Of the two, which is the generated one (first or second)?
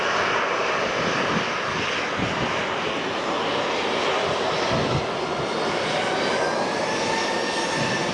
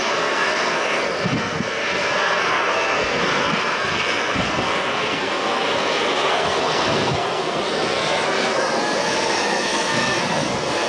second